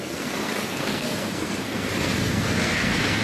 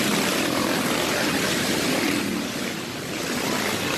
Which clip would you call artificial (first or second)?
first